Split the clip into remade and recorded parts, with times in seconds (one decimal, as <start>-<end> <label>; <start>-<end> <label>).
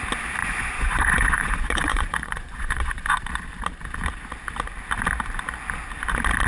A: 0.0-0.4 recorded; 0.4-3.1 remade; 3.1-6.5 recorded